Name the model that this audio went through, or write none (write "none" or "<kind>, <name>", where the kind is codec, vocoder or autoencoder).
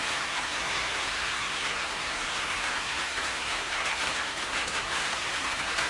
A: codec, SNAC